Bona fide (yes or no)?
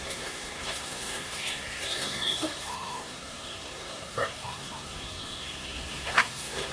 no